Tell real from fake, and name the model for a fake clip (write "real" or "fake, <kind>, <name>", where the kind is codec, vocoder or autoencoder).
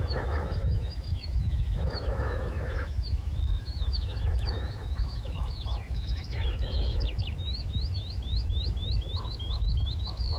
fake, autoencoder, DAC-VAE